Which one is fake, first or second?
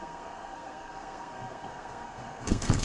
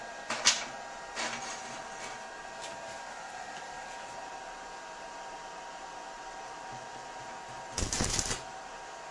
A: first